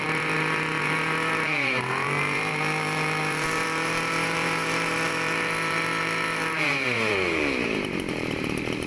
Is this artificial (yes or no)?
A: yes